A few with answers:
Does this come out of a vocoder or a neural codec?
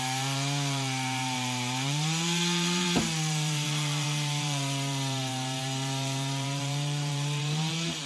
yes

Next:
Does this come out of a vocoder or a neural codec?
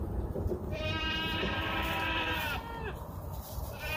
yes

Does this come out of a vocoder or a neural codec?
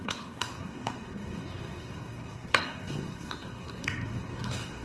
yes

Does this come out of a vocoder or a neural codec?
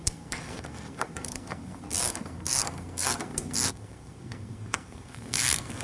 yes